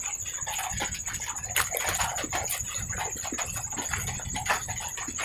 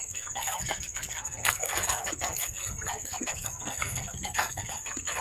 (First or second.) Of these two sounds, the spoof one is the second